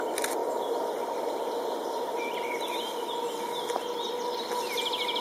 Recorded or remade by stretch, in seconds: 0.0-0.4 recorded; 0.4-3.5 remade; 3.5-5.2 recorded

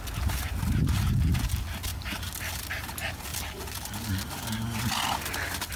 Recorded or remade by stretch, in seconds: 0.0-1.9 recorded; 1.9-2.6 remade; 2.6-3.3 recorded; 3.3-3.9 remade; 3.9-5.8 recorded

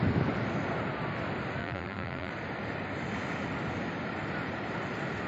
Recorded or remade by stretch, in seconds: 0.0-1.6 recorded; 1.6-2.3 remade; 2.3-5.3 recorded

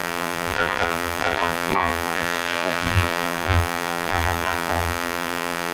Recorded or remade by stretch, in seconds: 0.0-5.7 remade

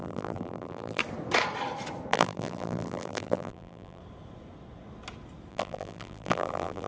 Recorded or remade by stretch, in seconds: 0.0-1.0 remade; 1.0-2.1 recorded; 2.1-4.0 remade; 4.0-5.5 recorded; 5.5-6.9 remade